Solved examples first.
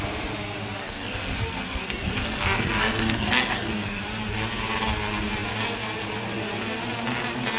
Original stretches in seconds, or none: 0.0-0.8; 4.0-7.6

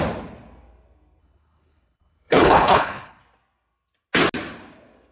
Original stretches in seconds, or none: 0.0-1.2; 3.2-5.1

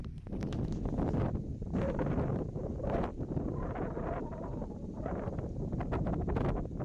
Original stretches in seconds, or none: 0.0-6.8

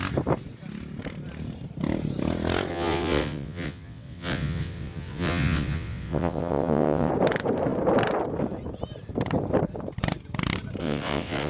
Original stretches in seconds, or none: 0.0-2.7; 7.1-10.8

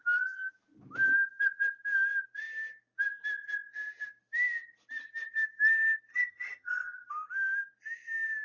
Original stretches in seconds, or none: 0.0-6.1; 7.1-8.4

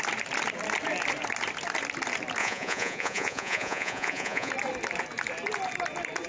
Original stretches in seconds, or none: 0.0-2.4; 4.5-6.3